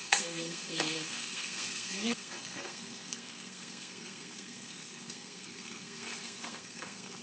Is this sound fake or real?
fake